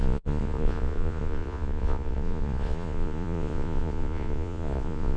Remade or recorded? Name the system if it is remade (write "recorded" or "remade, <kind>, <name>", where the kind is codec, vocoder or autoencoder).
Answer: remade, vocoder, Vocos